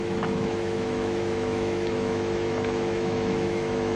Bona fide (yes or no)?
no